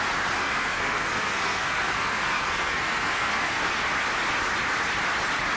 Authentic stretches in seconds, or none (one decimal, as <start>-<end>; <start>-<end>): 0.0-0.4; 3.8-5.6